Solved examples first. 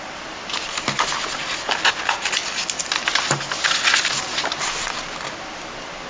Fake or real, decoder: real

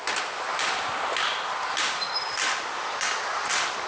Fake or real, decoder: real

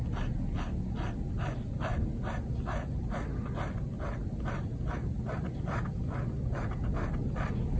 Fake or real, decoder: real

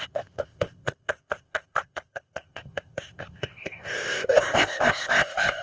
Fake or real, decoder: fake, codec, ZipCodec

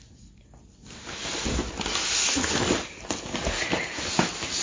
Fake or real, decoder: real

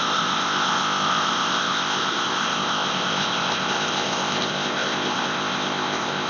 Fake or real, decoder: fake, codec, ZipCodec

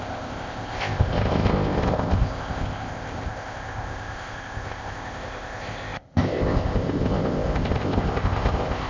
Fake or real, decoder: fake, codec, ZipCodec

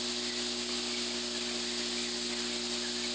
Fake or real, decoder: real